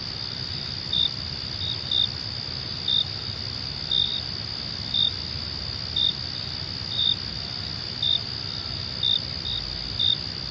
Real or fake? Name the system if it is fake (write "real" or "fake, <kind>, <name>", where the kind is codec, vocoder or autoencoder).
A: real